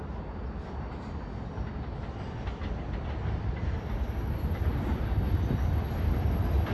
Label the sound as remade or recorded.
recorded